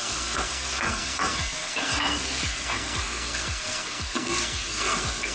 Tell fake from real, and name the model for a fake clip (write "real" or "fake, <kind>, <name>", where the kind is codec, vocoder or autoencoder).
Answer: fake, codec, SNAC